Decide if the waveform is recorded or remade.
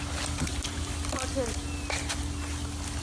recorded